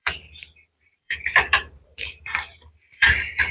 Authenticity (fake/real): fake